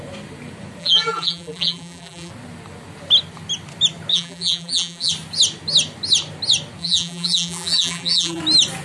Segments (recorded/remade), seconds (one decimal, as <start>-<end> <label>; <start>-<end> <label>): 0.0-0.8 recorded; 0.8-2.3 remade; 2.3-4.1 recorded; 4.1-5.1 remade; 5.1-6.8 recorded; 6.8-8.4 remade; 8.4-8.8 recorded